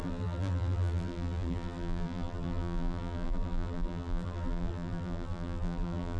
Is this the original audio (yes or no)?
no